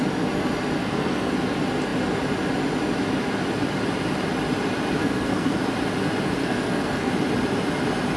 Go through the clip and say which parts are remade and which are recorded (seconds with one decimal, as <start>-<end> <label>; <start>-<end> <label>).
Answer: 0.0-0.8 recorded; 0.8-1.3 remade; 1.3-5.0 recorded; 5.0-5.6 remade; 5.6-6.4 recorded; 6.4-7.1 remade; 7.1-8.2 recorded